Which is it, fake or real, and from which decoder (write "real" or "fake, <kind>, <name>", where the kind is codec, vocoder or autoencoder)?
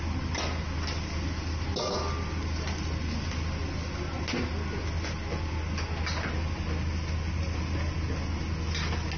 real